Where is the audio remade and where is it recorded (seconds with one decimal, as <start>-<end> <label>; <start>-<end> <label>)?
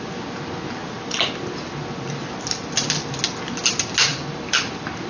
0.0-4.1 recorded; 4.1-5.1 remade